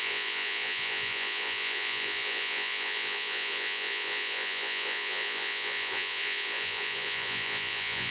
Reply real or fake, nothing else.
fake